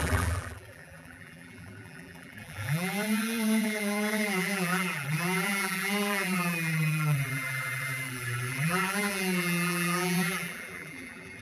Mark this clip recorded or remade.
remade